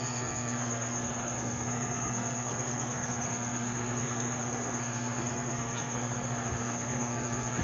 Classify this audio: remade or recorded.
remade